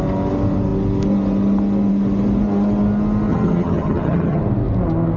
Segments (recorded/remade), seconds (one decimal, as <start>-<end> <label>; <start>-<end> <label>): 0.0-3.3 recorded; 3.3-4.4 remade; 4.4-5.2 recorded